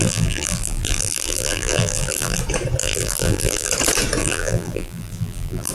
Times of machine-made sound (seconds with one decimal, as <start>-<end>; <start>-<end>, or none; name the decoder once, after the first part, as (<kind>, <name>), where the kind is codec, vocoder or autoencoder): 0.0-2.4 (vocoder, BigVGAN v2); 2.8-3.7; 4.2-5.7